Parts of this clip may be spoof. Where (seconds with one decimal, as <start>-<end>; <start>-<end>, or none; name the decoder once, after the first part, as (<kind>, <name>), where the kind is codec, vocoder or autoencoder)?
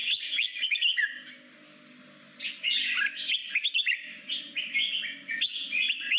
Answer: none